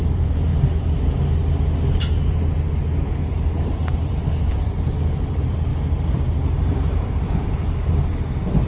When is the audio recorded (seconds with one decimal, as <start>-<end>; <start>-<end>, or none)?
0.5-3.1; 5.7-6.7